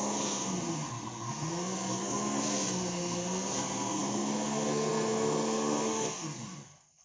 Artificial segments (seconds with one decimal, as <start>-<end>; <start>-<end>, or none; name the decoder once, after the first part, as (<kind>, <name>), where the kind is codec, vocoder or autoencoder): 0.0-7.0 (codec, SNAC)